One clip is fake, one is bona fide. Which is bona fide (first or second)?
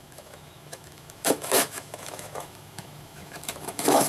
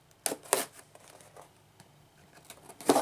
second